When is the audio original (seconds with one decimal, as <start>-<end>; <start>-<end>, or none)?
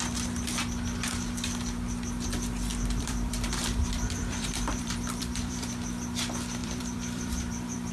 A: 0.0-2.7; 5.7-6.6